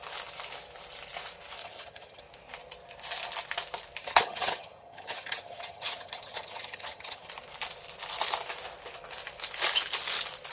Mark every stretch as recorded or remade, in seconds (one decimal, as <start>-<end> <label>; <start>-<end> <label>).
0.0-1.6 recorded; 1.6-2.2 remade; 2.2-4.0 recorded; 4.0-7.3 remade; 7.3-10.5 recorded